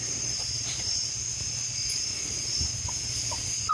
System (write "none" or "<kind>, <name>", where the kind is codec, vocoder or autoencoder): none